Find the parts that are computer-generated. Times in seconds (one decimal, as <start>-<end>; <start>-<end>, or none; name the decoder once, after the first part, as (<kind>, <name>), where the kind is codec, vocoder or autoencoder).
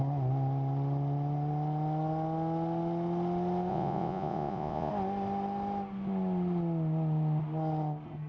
3.7-4.9 (vocoder, Vocos)